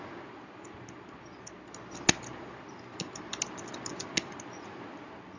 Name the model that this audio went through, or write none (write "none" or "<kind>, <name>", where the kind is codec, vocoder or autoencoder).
none